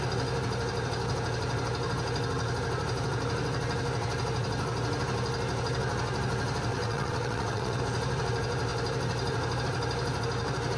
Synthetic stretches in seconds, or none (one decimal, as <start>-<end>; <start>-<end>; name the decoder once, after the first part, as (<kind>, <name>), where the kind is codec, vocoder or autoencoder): 6.7-7.8 (vocoder, WaveNeXt)